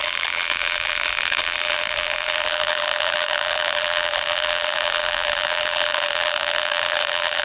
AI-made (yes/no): yes